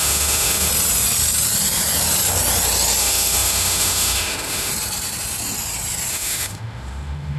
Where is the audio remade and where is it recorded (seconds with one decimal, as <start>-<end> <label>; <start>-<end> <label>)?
0.0-0.7 remade; 0.7-3.0 recorded; 3.0-4.7 remade; 4.7-6.1 recorded; 6.1-7.4 remade